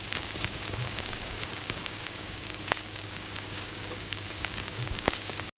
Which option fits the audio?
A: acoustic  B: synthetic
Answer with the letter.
B